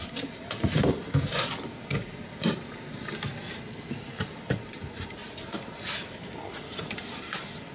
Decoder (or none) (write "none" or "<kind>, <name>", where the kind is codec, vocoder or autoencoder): none